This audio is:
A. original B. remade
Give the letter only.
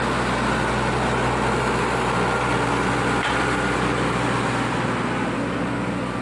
A